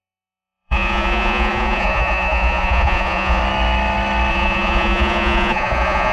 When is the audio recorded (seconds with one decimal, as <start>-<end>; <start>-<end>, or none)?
3.4-4.3